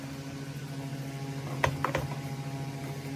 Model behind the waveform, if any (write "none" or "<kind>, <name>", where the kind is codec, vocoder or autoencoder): none